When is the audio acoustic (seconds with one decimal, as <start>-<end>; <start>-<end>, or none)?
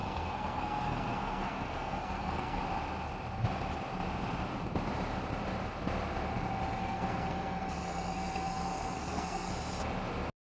2.6-6.8; 9.5-10.5